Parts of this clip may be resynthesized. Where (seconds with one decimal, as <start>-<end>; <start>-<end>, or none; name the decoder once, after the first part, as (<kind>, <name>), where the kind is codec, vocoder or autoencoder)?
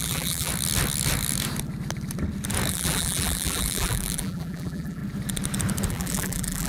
0.0-0.5 (vocoder, BigVGAN v2); 2.7-5.0; 5.9-6.7